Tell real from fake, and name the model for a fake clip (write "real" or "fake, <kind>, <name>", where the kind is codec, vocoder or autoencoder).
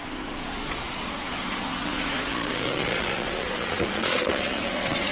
fake, vocoder, Vocos